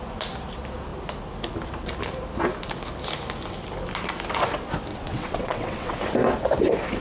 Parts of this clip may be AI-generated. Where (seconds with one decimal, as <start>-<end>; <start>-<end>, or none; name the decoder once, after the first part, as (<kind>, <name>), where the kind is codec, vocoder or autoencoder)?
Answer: 4.9-6.0 (vocoder, WaveNeXt)

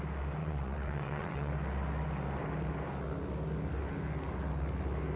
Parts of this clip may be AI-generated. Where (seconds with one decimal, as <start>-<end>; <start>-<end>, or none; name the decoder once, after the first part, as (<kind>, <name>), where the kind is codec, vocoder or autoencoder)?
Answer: 0.4-1.5 (vocoder, WaveNeXt)

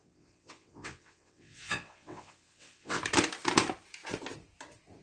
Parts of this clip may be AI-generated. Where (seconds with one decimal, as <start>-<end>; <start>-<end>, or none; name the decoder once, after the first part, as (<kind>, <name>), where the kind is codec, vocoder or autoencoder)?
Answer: 0.0-3.0 (vocoder, WaveNeXt)

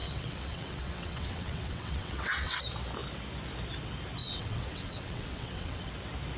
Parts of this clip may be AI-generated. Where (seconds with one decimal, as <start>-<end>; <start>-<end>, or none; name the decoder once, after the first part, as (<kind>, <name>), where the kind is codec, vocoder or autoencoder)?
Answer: 0.0-2.6 (vocoder, WaveNeXt); 4.2-5.9

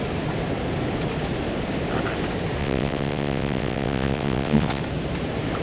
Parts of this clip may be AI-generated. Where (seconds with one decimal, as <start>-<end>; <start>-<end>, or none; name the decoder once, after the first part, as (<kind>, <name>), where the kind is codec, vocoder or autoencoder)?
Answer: 2.6-4.8 (vocoder, WaveNeXt)

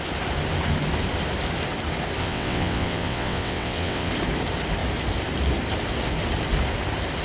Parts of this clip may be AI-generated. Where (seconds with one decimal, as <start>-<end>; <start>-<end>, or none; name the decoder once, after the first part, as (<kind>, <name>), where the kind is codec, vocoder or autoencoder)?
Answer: 2.2-4.1 (vocoder, WaveNeXt)